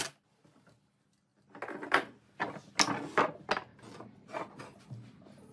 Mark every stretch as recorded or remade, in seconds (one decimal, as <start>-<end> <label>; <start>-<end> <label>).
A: 0.0-5.5 recorded